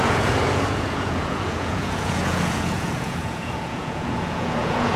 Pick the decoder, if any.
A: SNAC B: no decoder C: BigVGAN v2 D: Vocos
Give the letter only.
D